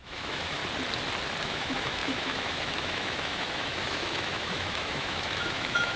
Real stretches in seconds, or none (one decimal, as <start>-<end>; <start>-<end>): 0.6-1.4